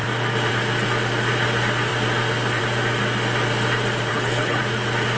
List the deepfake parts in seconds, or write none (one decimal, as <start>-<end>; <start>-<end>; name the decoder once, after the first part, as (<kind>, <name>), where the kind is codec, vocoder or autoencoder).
4.1-4.6 (codec, HILCodec)